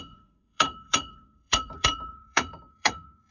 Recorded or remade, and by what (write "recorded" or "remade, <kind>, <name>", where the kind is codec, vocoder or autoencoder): remade, vocoder, Vocos